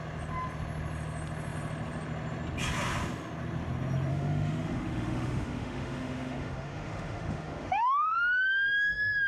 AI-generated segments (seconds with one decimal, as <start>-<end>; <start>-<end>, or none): 4.1-9.3